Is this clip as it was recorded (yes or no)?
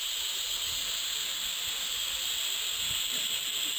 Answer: yes